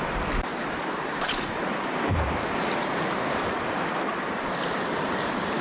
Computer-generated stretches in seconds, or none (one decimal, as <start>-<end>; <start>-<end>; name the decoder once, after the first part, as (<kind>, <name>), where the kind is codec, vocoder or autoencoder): 0.5-3.9 (vocoder, BigVGAN v2)